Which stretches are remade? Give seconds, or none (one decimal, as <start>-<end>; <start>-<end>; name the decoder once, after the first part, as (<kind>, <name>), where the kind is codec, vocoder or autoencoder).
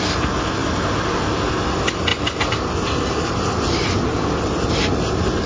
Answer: none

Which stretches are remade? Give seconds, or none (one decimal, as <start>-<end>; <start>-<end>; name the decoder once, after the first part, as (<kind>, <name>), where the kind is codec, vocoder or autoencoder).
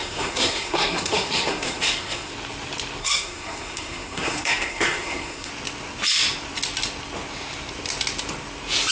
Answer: 0.0-2.3 (codec, SNAC); 3.0-5.5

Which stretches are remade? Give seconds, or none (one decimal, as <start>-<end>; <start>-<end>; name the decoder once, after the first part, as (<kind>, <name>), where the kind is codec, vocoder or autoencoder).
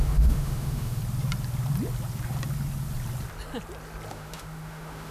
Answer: 0.0-1.0 (autoencoder, DAC-VAE); 4.1-5.1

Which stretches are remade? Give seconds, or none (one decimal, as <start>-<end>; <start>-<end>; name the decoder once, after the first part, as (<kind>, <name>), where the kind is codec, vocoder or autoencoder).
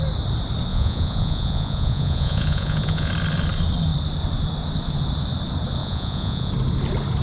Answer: 0.7-3.1 (vocoder, Vocos); 5.8-6.5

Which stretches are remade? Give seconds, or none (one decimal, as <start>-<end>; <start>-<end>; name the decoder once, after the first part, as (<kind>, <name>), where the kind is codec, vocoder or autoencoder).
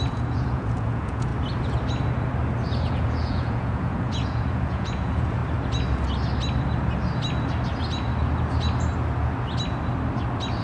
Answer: 0.0-1.3 (vocoder, Vocos); 2.9-5.4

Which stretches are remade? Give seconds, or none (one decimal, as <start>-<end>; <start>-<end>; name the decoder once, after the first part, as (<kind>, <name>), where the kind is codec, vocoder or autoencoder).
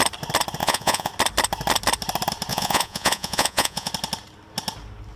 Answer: 0.6-1.1 (vocoder, Vocos); 2.5-3.9